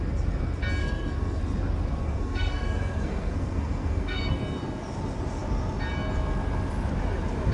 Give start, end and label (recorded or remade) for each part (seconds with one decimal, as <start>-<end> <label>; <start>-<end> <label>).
0.0-0.8 recorded; 0.8-1.4 remade; 1.4-2.0 recorded; 2.0-4.4 remade; 4.4-7.5 recorded